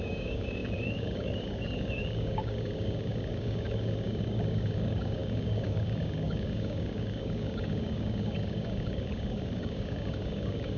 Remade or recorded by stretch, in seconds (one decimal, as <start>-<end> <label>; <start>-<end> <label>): 0.0-10.8 remade